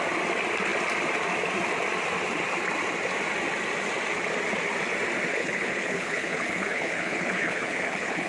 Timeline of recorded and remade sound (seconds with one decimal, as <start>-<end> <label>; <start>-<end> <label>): 0.0-5.3 recorded; 5.3-8.3 remade